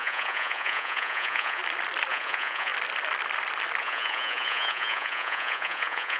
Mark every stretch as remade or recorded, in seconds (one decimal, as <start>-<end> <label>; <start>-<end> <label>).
0.0-1.6 remade; 1.6-2.1 recorded; 2.1-2.7 remade; 2.7-3.8 recorded; 3.8-6.2 remade